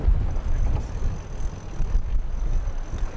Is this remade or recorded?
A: recorded